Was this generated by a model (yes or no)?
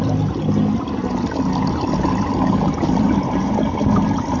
yes